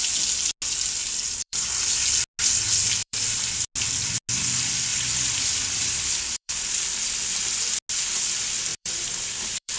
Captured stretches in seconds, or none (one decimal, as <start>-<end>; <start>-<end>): 0.0-1.0; 1.8-3.0; 3.6-4.9; 6.6-8.7